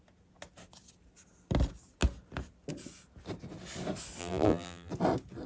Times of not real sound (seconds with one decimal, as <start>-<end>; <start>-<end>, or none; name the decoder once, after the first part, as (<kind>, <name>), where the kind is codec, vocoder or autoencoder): 4.2-4.9 (vocoder, BigVGAN v2)